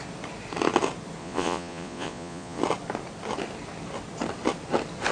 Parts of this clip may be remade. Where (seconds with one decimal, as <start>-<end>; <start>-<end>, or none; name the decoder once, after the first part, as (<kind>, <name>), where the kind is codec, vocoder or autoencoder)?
1.2-2.6 (vocoder, Vocos)